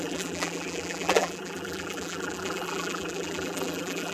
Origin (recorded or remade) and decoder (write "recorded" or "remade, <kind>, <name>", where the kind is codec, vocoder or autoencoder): remade, vocoder, BigVGAN v2